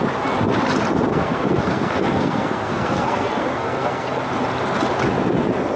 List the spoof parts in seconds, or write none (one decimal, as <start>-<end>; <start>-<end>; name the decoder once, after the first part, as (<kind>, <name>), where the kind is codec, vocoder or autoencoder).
1.1-4.2 (codec, SNAC)